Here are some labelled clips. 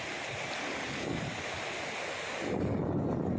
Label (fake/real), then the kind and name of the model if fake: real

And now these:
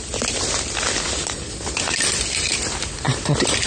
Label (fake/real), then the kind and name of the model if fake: real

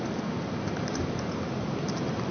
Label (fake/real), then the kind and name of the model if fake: real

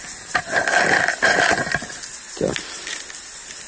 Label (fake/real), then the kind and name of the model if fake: real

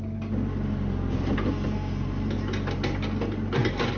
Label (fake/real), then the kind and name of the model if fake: real